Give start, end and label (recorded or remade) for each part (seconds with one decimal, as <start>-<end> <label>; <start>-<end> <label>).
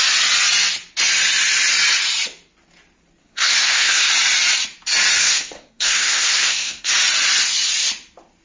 0.0-3.2 recorded; 3.2-4.1 remade; 4.1-5.2 recorded; 5.2-6.9 remade; 6.9-8.4 recorded